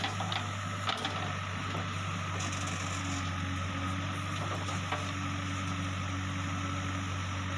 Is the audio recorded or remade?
recorded